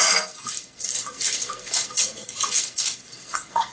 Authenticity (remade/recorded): remade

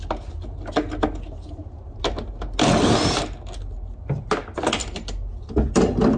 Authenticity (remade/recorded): recorded